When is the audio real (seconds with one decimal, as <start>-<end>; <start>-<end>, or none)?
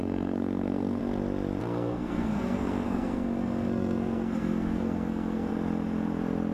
1.0-1.6; 5.5-6.5